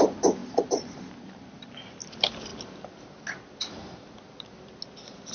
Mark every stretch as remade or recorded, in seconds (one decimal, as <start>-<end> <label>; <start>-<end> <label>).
0.0-5.3 recorded